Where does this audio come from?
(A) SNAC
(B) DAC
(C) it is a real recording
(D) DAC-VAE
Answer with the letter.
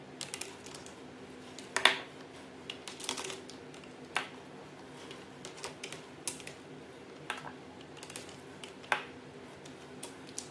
C